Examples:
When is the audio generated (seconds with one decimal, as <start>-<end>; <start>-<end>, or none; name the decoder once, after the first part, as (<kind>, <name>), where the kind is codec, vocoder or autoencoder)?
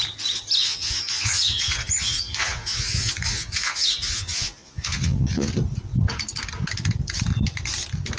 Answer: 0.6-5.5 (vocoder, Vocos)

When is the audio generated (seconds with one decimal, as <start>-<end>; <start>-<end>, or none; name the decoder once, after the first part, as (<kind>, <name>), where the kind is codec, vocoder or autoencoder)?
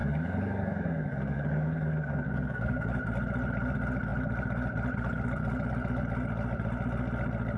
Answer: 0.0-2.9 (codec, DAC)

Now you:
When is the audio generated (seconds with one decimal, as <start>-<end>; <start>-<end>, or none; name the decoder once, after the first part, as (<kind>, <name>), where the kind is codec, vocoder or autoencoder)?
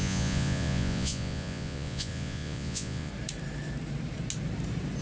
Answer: 0.0-3.1 (vocoder, Vocos)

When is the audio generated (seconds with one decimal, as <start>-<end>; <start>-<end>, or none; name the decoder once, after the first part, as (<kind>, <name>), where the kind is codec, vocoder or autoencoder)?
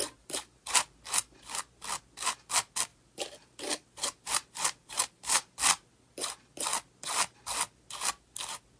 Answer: 0.0-1.0 (vocoder, BigVGAN v2); 2.9-5.5